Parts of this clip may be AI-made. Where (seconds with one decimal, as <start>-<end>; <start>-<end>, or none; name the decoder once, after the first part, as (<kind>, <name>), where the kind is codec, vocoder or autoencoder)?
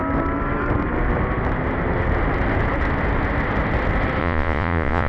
4.2-5.1 (vocoder, Vocos)